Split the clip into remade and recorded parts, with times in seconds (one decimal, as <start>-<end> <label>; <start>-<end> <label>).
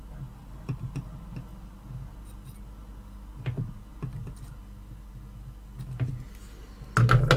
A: 0.0-0.4 recorded; 0.4-0.9 remade; 0.9-7.4 recorded